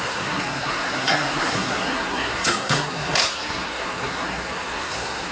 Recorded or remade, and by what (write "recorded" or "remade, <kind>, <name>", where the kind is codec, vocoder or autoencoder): remade, codec, SNAC